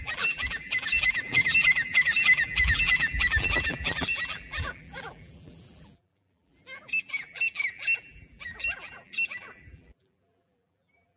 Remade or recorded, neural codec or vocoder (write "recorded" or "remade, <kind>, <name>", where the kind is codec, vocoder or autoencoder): remade, vocoder, BigVGAN v2